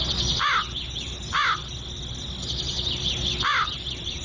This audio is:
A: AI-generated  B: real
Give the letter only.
B